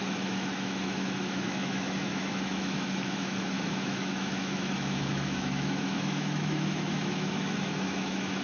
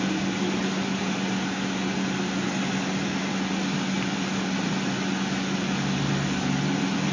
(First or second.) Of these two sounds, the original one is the second